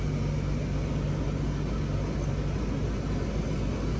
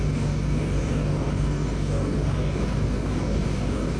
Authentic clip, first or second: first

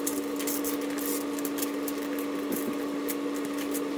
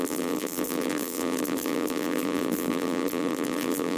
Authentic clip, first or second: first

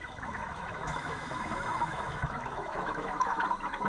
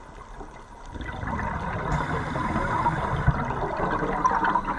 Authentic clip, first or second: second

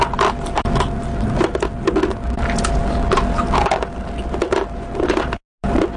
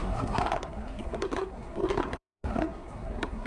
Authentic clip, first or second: first